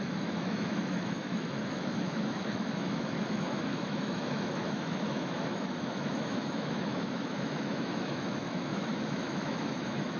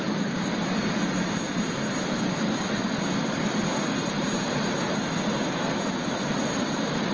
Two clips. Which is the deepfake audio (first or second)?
first